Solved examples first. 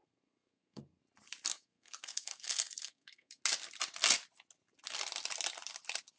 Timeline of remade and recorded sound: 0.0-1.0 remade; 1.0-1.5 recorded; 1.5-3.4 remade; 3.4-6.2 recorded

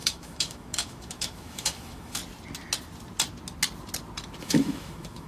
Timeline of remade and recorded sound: 0.0-2.2 remade; 2.2-4.4 recorded; 4.4-5.3 remade

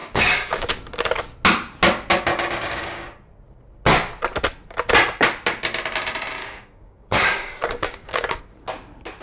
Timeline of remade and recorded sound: 0.0-0.7 remade; 0.7-2.3 recorded; 2.3-3.0 remade; 3.0-6.4 recorded; 6.4-8.4 remade; 8.4-9.2 recorded

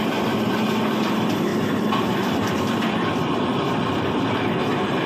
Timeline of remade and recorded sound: 0.0-1.5 recorded; 1.5-4.6 remade; 4.6-5.1 recorded